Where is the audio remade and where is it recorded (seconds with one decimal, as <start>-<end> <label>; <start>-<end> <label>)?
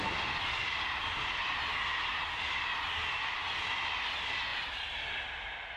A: 0.0-5.8 recorded